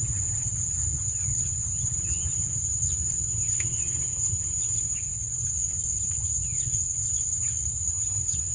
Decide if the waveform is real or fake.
fake